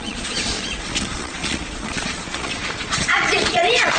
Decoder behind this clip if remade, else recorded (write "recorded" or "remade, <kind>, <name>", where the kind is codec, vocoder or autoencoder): remade, vocoder, Vocos